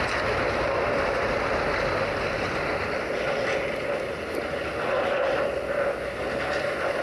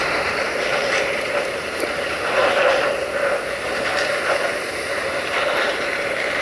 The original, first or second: first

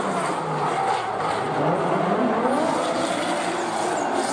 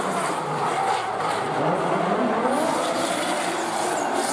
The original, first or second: first